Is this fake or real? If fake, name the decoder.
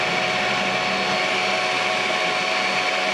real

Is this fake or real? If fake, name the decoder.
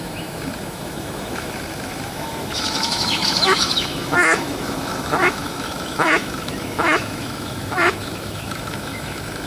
fake, autoencoder, DAC-VAE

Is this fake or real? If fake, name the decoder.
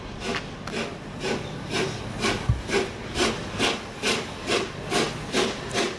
real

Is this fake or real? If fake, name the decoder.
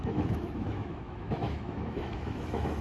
fake, autoencoder, DAC-VAE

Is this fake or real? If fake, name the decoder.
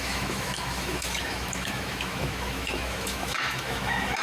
fake, autoencoder, DAC-VAE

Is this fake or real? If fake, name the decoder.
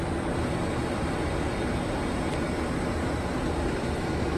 real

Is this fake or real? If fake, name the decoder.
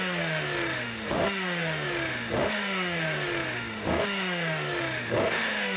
fake, autoencoder, DAC-VAE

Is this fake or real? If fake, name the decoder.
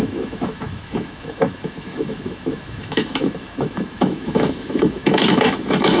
fake, autoencoder, DAC-VAE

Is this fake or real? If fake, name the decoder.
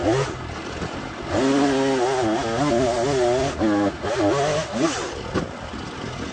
real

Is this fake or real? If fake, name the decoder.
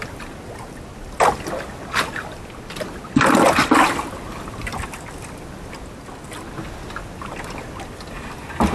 real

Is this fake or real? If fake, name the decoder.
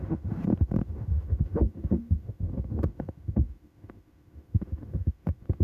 fake, autoencoder, DAC-VAE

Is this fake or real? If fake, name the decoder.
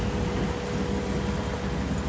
real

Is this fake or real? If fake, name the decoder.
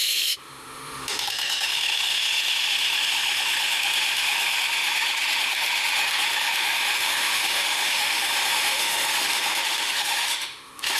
fake, autoencoder, DAC-VAE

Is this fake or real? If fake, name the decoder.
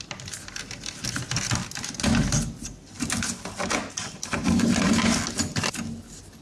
real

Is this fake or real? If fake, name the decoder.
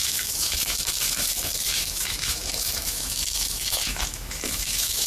fake, autoencoder, DAC-VAE